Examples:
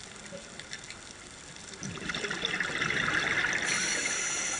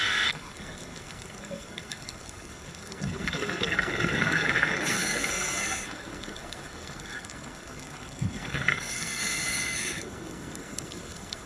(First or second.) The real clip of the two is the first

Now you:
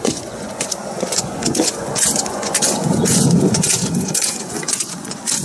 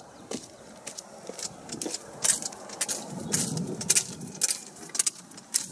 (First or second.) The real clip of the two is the second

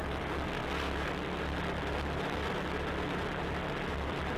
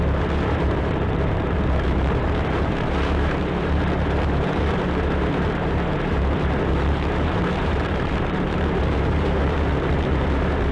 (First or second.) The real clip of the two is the first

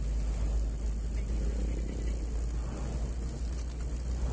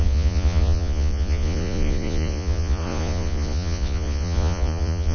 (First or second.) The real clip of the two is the first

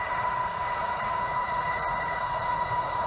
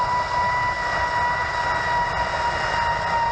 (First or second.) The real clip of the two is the second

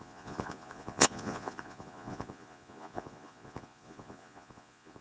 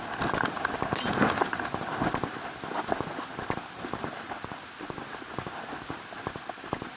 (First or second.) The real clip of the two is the second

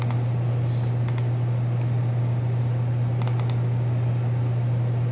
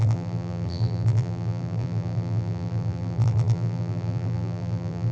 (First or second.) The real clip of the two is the first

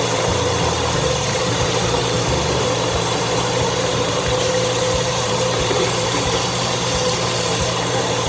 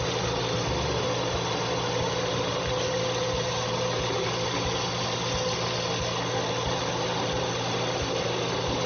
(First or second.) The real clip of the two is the second